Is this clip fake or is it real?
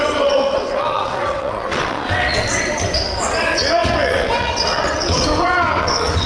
fake